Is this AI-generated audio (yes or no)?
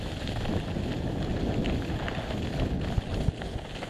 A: no